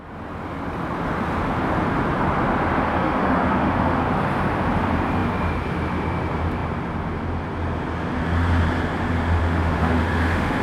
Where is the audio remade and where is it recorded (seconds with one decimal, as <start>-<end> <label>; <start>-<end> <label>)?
0.0-2.9 recorded; 2.9-4.0 remade; 4.0-9.4 recorded; 9.4-10.6 remade